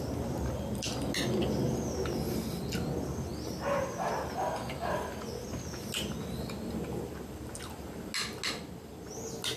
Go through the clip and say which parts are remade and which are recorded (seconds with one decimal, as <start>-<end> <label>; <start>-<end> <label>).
0.0-9.6 recorded